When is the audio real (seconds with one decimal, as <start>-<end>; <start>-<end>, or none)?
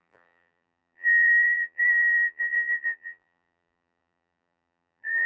none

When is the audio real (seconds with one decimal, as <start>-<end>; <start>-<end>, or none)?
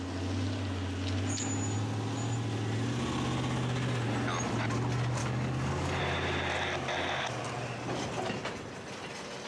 0.0-5.2; 6.0-9.5